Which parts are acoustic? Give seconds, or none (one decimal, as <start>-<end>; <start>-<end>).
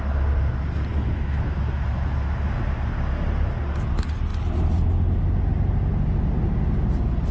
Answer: 0.0-0.9; 2.6-7.3